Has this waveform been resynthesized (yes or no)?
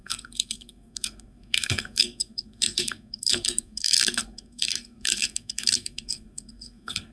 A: yes